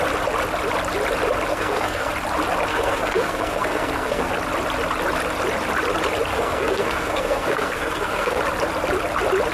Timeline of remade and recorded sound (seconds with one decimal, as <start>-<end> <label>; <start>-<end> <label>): 0.0-1.5 recorded; 1.5-2.1 remade; 2.1-2.7 recorded; 2.7-4.3 remade; 4.3-6.3 recorded; 6.3-8.4 remade; 8.4-9.5 recorded

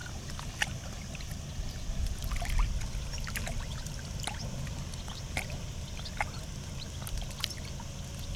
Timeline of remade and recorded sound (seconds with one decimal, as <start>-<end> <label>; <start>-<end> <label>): 0.0-8.4 recorded

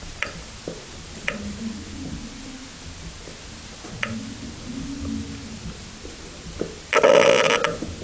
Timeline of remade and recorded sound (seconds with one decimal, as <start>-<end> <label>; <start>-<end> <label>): 0.0-8.0 recorded

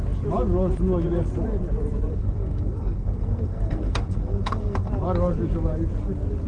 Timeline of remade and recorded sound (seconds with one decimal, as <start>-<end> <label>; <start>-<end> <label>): 0.0-2.1 recorded; 2.1-4.9 remade; 4.9-6.5 recorded

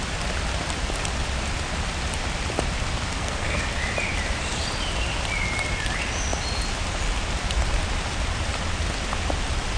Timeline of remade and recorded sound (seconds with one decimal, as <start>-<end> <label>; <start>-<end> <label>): 0.0-3.1 recorded; 3.1-3.6 remade; 3.6-9.8 recorded